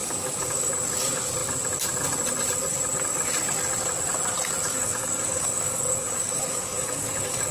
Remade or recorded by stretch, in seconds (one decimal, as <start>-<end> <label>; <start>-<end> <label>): 0.0-0.7 remade; 0.7-4.7 recorded; 4.7-7.5 remade